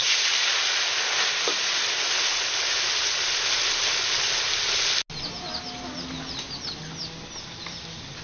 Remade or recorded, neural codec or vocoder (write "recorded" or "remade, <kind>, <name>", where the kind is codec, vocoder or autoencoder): recorded